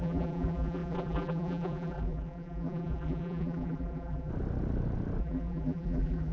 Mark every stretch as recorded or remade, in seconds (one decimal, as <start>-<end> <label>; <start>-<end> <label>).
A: 0.0-4.3 remade; 4.3-5.2 recorded; 5.2-6.3 remade